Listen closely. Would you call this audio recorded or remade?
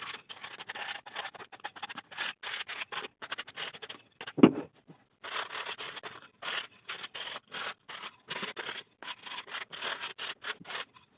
recorded